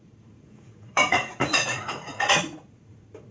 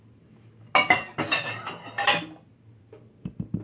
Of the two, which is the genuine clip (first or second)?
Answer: second